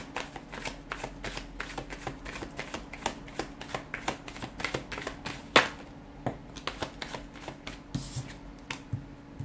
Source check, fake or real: real